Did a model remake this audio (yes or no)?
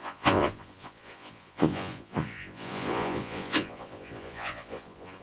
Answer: yes